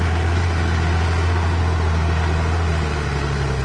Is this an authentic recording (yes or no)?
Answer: yes